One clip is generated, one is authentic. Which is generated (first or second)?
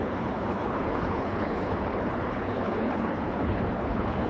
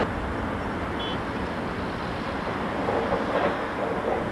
first